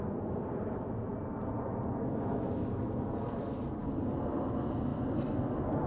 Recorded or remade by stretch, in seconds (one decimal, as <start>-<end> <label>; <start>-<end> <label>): 0.0-5.9 recorded